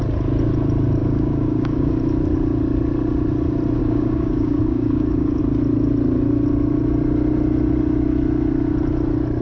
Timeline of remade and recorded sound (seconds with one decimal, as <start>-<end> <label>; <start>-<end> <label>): 0.0-1.0 recorded; 1.0-2.0 remade; 2.0-3.8 recorded; 3.8-5.4 remade; 5.4-9.4 recorded